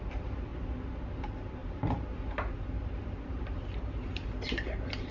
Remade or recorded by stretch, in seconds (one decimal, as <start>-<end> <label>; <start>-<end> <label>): 0.0-0.5 remade; 0.5-1.1 recorded; 1.1-5.1 remade